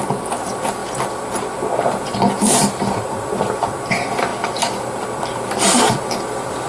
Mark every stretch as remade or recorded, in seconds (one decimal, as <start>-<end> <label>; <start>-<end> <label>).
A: 0.0-0.8 remade; 0.8-1.9 recorded; 1.9-4.3 remade; 4.3-5.2 recorded; 5.2-6.7 remade